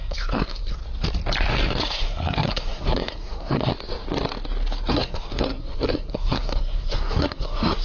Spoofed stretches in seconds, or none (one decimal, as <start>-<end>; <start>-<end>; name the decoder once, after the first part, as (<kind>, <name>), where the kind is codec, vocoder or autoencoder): 0.0-0.8 (codec, SNAC); 1.8-3.7; 4.9-7.8